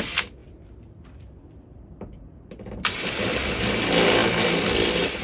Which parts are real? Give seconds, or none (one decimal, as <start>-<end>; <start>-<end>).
0.0-0.4; 3.5-5.2